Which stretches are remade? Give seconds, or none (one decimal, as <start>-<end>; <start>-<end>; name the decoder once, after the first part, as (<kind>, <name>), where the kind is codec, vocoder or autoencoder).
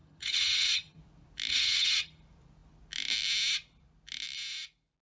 0.0-1.0 (vocoder, HiFi-GAN); 1.5-2.2